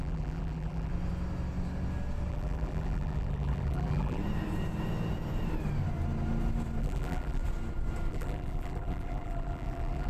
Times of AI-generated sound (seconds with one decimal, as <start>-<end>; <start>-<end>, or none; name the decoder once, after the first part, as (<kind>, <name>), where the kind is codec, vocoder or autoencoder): 0.0-0.9 (vocoder, BigVGAN v2); 2.3-4.2; 6.8-7.4; 8.1-10.1